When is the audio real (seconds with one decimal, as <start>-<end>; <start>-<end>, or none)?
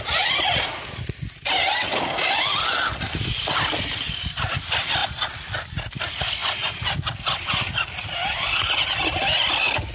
0.0-9.9